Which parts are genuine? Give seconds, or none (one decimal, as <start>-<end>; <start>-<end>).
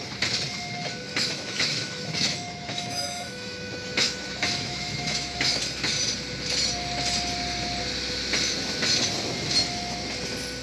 0.0-1.1; 5.6-10.6